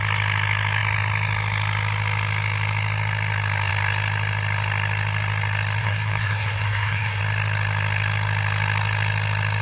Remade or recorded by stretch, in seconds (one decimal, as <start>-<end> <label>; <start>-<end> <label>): 0.0-5.8 recorded; 5.8-7.2 remade; 7.2-9.6 recorded